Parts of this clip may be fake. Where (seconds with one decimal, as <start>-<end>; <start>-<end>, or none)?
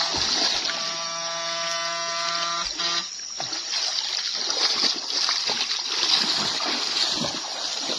none